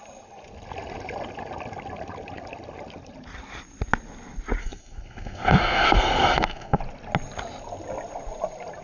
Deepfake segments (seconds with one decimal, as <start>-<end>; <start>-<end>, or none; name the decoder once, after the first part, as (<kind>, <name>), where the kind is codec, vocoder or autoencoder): 4.6-6.8 (codec, SNAC)

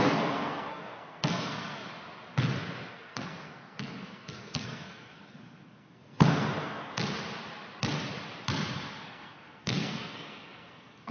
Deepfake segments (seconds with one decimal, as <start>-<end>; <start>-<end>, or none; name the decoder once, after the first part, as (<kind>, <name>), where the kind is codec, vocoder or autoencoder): 0.0-1.8 (codec, SNAC); 2.9-6.9; 9.0-11.1

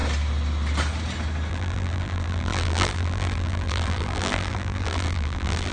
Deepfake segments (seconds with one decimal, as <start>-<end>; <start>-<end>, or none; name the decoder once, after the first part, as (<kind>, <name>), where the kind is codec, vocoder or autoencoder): 1.5-5.7 (vocoder, BigVGAN v2)

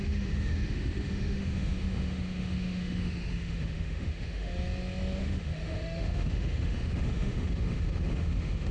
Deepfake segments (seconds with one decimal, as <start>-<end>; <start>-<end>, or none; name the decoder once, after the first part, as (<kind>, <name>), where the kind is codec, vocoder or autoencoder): 0.0-4.5 (autoencoder, DAC-VAE); 5.2-8.7

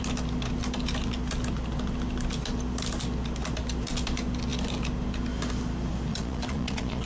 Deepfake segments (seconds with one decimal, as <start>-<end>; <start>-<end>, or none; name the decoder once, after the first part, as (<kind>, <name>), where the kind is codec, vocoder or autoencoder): 6.1-7.1 (vocoder, Vocos)